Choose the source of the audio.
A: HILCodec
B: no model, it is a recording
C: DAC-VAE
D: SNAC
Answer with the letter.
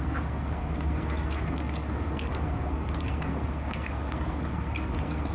D